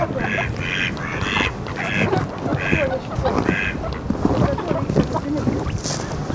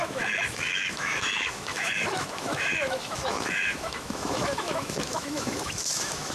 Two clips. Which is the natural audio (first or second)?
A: first